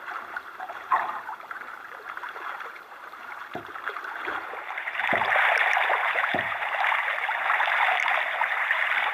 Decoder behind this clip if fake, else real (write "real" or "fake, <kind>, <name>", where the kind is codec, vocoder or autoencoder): fake, vocoder, BigVGAN v2